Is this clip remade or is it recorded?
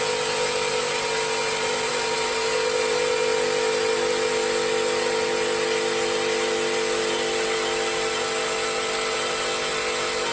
recorded